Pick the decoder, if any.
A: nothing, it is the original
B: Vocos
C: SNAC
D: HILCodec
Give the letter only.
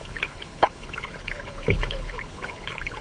D